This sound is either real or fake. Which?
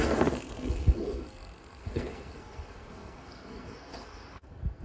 fake